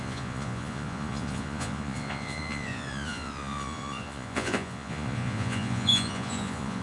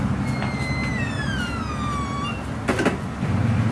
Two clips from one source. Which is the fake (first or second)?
first